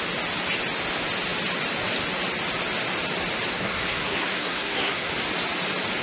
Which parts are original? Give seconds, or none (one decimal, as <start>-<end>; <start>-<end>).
0.0-3.5; 5.1-6.0

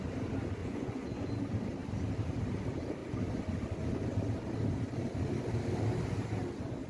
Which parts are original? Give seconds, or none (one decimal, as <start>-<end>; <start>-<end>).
0.0-0.6; 1.3-6.9

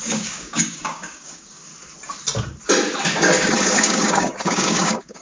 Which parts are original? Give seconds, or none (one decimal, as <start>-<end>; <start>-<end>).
1.7-3.6

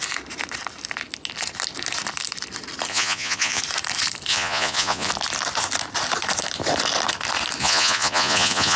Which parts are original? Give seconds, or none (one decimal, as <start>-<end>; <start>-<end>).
0.0-2.9; 3.6-4.3; 5.1-7.6

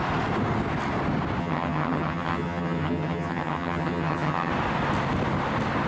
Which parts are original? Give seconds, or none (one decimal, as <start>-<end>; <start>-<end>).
0.0-1.4; 4.5-5.9

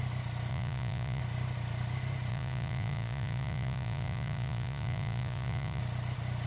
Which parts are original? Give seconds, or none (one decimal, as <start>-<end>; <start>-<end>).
0.0-0.5; 1.2-2.3; 5.8-6.5

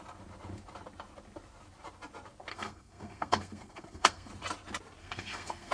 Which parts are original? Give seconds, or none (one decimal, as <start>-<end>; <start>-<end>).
0.0-2.5; 4.3-5.0